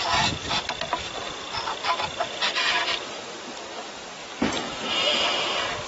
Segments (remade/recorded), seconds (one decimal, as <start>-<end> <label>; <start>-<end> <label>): 0.0-5.9 recorded

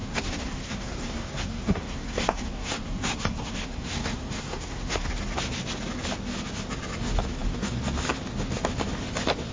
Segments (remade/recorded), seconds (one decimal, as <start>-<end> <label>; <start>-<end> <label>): 0.0-5.1 remade; 5.1-9.5 recorded

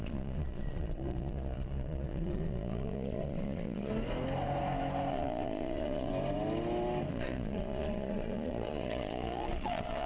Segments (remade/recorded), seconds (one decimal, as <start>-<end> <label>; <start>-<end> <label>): 0.0-3.9 remade; 3.9-5.1 recorded; 5.1-6.1 remade; 6.1-7.1 recorded; 7.1-10.1 remade

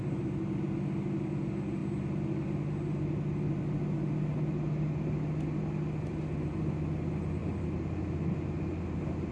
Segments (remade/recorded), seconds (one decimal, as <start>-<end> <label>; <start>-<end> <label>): 0.0-9.3 recorded

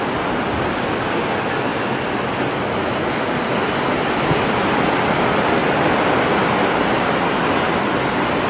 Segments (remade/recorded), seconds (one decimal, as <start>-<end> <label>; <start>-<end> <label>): 0.0-8.5 recorded

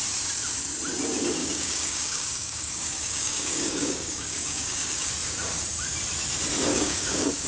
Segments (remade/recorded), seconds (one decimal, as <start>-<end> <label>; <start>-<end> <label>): 0.0-1.4 recorded; 1.4-5.1 remade; 5.1-6.7 recorded; 6.7-7.5 remade

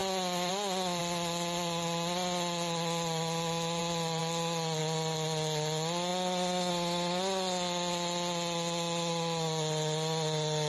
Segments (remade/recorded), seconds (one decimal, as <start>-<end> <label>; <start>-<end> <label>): 0.0-10.7 recorded